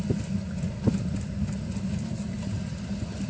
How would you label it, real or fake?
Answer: real